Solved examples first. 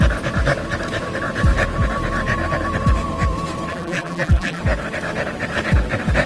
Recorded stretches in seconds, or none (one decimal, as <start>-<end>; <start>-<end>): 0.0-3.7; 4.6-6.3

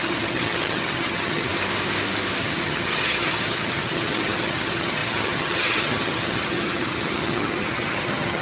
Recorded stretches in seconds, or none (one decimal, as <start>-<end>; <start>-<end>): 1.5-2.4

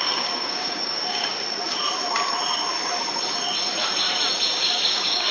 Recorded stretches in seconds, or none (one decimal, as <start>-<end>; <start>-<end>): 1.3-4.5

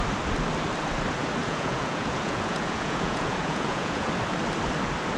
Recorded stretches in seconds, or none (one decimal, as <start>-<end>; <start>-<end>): 0.0-1.4; 4.1-5.2

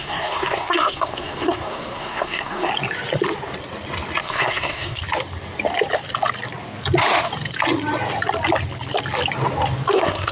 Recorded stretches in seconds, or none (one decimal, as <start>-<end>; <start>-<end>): 2.7-4.2; 5.0-9.9

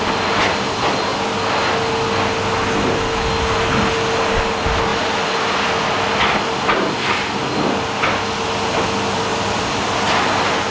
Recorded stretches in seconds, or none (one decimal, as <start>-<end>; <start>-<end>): 0.0-4.9; 5.8-9.3; 10.0-10.7

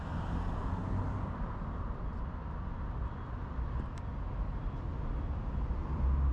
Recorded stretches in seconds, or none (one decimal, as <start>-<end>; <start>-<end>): 0.0-6.3